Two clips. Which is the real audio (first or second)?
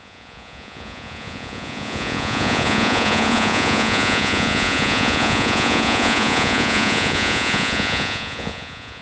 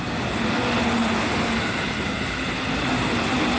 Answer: second